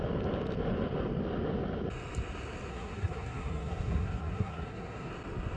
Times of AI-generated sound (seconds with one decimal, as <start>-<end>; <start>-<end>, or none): 2.7-5.1